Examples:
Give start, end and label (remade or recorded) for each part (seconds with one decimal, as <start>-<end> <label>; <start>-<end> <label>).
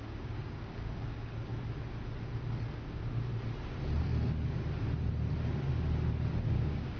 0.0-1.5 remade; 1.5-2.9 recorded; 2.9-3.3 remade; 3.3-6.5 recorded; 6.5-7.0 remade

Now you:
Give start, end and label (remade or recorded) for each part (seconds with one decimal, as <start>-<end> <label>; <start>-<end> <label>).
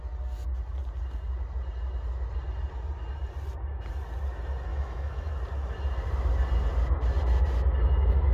0.0-4.7 recorded; 4.7-5.3 remade; 5.3-8.3 recorded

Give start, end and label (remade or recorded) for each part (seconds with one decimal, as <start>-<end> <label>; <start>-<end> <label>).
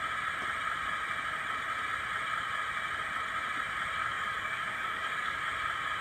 0.0-4.0 recorded; 4.0-5.4 remade; 5.4-6.0 recorded